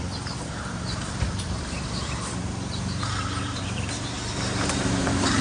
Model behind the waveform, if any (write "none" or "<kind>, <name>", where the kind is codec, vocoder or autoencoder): vocoder, BigVGAN v2